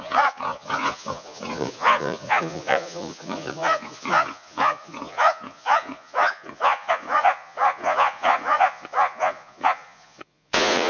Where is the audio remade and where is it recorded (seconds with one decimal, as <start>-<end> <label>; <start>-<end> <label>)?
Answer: 0.0-10.9 remade